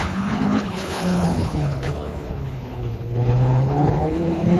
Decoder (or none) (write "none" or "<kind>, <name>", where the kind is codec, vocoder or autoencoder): codec, HILCodec